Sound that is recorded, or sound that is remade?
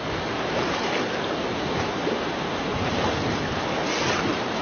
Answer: recorded